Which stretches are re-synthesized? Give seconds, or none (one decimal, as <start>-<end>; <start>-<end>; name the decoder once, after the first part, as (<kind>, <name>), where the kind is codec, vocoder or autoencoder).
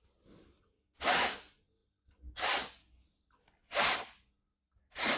none